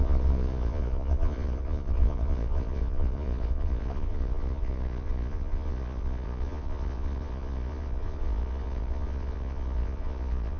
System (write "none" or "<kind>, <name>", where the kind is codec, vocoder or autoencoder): vocoder, Vocos